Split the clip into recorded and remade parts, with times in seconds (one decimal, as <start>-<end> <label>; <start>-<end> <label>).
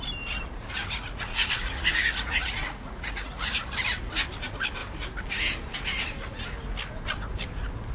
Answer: 0.0-0.8 recorded; 0.8-3.5 remade; 3.5-7.9 recorded